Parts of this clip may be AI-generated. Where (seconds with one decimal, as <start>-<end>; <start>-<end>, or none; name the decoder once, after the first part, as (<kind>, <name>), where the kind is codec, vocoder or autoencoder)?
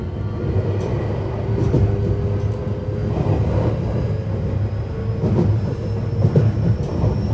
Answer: none